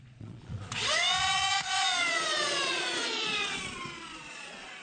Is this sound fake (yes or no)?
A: yes